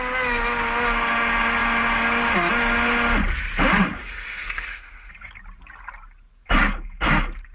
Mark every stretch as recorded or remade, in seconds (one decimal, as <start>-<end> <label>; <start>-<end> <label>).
0.0-4.0 recorded; 4.0-5.1 remade; 5.1-7.5 recorded